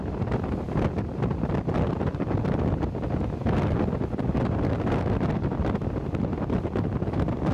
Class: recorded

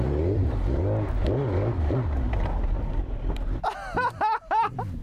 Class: recorded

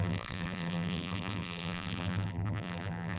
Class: remade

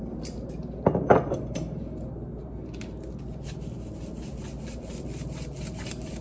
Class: recorded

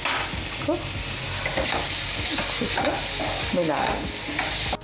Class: recorded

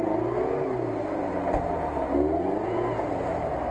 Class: recorded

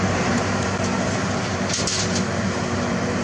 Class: remade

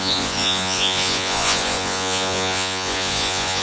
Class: remade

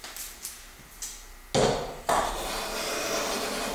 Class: recorded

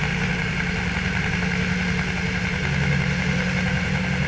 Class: recorded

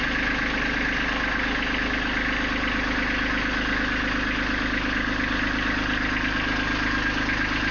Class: recorded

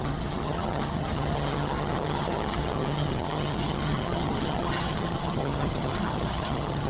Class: remade